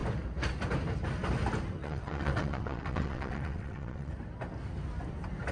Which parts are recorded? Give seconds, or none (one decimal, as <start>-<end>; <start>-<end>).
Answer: 0.0-1.8; 4.1-5.5